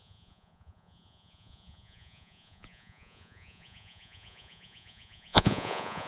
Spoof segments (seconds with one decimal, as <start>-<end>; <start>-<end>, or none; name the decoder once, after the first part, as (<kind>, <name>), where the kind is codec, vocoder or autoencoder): 0.0-6.1 (vocoder, Vocos)